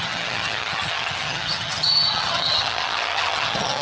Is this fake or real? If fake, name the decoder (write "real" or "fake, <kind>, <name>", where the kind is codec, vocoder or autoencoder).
fake, vocoder, HiFi-GAN